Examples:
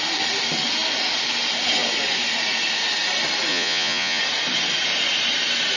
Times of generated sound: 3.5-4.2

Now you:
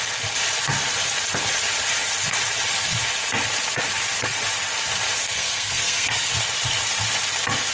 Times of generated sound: 5.2-6.3

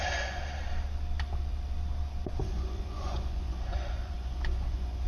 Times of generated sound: 0.0-0.4; 2.4-5.1

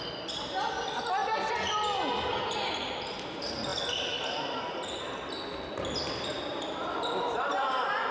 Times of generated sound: 6.5-7.4

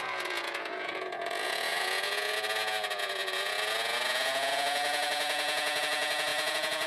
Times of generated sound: 0.0-6.9

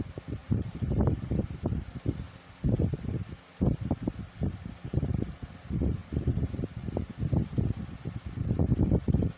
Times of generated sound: 0.4-1.4; 6.0-7.1

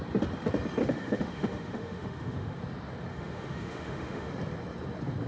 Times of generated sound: 0.8-2.6; 3.1-4.3